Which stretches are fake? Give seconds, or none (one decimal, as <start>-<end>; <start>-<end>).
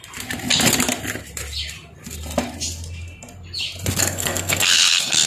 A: 4.0-5.3